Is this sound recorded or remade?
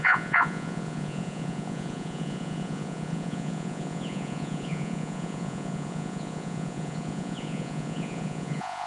remade